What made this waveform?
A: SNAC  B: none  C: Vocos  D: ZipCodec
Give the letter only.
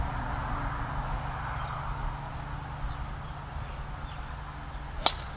B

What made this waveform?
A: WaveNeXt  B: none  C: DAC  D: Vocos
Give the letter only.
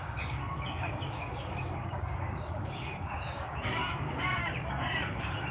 C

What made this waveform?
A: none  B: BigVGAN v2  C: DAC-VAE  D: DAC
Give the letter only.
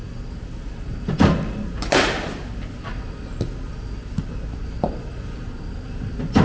A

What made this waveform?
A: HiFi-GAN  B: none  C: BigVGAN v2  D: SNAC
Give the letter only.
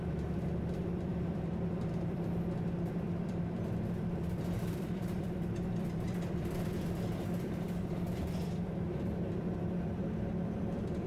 C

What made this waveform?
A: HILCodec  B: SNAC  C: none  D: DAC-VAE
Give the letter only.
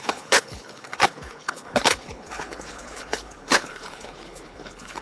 A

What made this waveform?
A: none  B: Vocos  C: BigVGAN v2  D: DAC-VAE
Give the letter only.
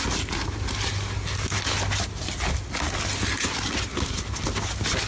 A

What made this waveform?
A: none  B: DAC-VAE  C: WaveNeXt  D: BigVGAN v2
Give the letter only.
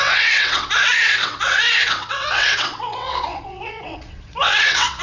C